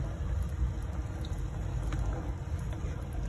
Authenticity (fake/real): real